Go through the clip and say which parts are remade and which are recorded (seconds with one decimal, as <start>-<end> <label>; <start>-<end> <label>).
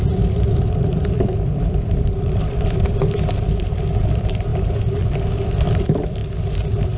0.0-7.0 remade